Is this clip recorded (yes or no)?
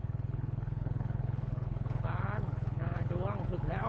no